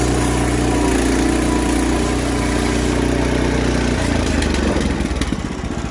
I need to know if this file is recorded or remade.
recorded